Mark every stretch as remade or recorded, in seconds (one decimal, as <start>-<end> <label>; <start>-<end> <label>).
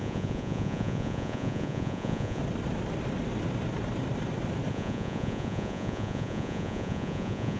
0.0-2.4 remade; 2.4-4.7 recorded; 4.7-7.6 remade